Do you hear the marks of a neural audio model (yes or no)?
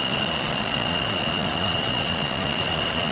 yes